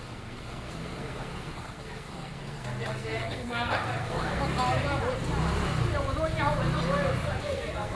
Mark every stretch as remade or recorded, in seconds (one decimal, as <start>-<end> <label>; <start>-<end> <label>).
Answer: 0.0-4.4 remade; 4.4-7.4 recorded; 7.4-8.0 remade